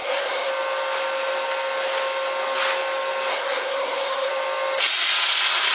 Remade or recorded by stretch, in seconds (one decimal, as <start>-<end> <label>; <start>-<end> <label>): 0.0-0.5 remade; 0.5-3.3 recorded; 3.3-4.3 remade; 4.3-5.7 recorded